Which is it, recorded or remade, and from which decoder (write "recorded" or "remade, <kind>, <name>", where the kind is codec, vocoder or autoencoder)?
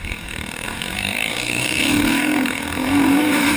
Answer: remade, codec, DAC